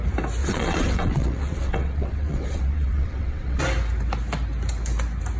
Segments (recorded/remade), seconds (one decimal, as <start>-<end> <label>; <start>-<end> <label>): 0.0-0.4 recorded; 0.4-3.6 remade; 3.6-5.4 recorded